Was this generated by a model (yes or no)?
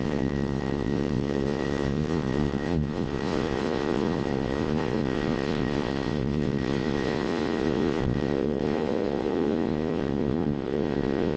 yes